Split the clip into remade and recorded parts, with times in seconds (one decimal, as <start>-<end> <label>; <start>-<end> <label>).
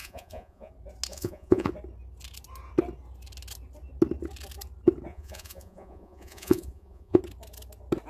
0.0-0.7 remade; 0.7-1.1 recorded; 1.1-1.7 remade; 1.7-5.1 recorded; 5.1-7.2 remade; 7.2-8.1 recorded